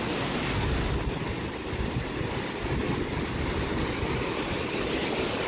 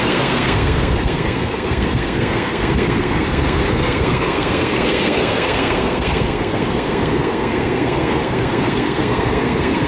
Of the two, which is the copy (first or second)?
second